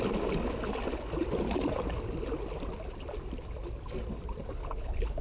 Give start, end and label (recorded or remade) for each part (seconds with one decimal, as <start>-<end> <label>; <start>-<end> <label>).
0.0-4.6 recorded; 4.6-5.2 remade